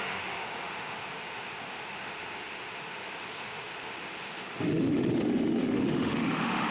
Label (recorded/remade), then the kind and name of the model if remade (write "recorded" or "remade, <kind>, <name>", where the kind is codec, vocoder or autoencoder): remade, autoencoder, DAC-VAE